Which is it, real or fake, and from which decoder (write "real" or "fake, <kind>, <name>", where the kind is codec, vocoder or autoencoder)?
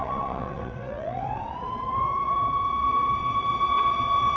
fake, vocoder, WaveNeXt